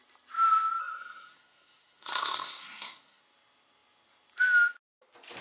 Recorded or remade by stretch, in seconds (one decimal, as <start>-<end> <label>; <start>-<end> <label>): 0.0-0.8 recorded; 0.8-3.2 remade; 3.2-5.4 recorded